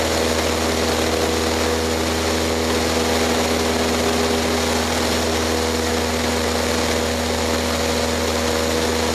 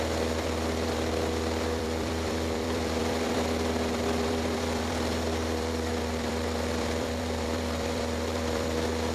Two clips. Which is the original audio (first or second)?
first